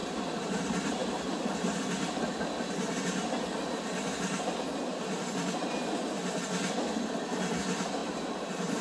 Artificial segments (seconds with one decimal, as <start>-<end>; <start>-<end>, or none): 0.0-0.6; 8.0-8.8